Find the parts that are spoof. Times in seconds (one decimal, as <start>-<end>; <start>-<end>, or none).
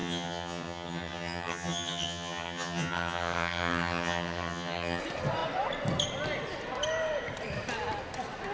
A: 0.0-5.0